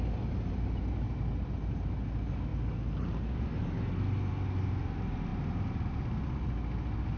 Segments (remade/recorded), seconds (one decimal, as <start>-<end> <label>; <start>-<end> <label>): 0.0-7.2 recorded